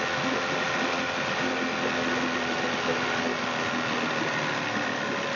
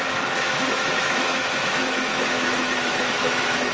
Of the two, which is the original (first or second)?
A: first